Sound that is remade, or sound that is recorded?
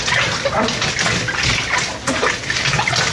recorded